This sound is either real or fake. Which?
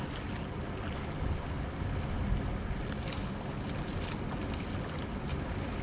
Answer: real